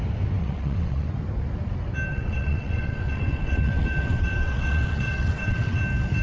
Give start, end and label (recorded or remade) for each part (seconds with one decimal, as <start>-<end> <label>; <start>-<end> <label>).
0.0-0.4 recorded; 0.4-1.1 remade; 1.1-2.1 recorded; 2.1-5.8 remade; 5.8-6.2 recorded

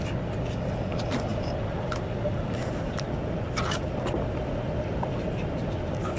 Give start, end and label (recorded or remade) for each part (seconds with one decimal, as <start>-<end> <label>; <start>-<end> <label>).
0.0-1.3 recorded; 1.3-5.0 remade; 5.0-6.2 recorded

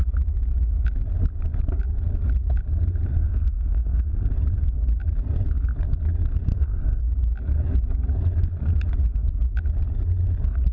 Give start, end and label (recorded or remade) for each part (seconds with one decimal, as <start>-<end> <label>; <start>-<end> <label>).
0.0-3.1 recorded; 3.1-4.3 remade; 4.3-6.5 recorded; 6.5-7.0 remade; 7.0-10.7 recorded

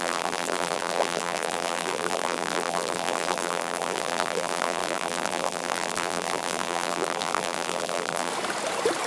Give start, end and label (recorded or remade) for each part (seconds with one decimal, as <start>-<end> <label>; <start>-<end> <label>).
0.0-8.3 remade; 8.3-9.1 recorded